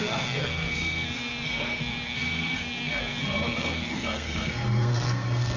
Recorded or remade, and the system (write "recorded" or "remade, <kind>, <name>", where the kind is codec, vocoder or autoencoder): remade, codec, SNAC